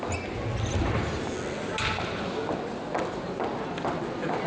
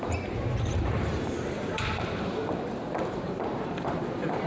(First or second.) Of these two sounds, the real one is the first